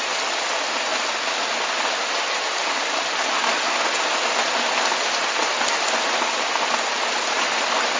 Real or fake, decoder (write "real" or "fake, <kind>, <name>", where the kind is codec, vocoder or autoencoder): real